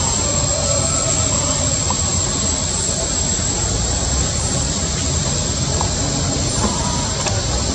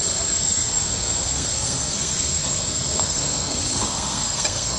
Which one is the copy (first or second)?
second